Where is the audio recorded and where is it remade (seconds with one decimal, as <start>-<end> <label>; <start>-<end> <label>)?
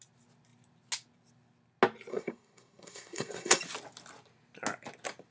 0.0-2.1 recorded; 2.1-3.6 remade; 3.6-5.3 recorded